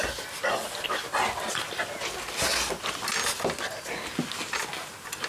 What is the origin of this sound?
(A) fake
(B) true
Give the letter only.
B